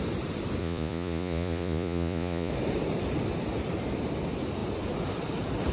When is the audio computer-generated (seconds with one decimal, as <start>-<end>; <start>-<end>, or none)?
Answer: 0.6-2.5